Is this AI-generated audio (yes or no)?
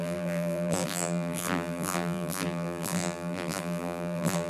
yes